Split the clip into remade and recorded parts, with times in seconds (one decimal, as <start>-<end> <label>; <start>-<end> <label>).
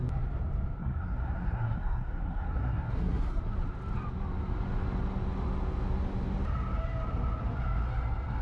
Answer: 0.0-0.8 recorded; 0.8-3.4 remade; 3.4-8.4 recorded